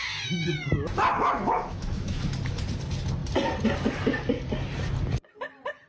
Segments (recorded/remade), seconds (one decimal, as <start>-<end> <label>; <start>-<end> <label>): 0.0-1.1 recorded; 1.1-2.2 remade; 2.2-5.9 recorded